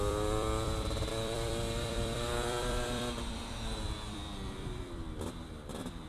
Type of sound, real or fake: fake